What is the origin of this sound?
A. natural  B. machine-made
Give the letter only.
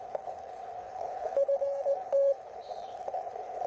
B